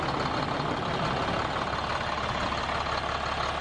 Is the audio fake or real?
real